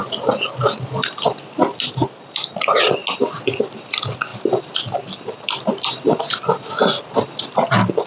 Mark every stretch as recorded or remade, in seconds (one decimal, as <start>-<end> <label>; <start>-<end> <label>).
0.0-8.1 recorded